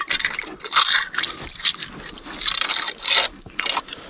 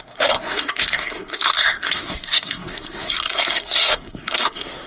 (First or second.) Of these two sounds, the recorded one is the first